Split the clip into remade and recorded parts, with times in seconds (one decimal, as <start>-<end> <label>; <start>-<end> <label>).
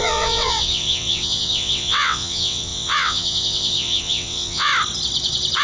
0.0-4.7 remade; 4.7-5.6 recorded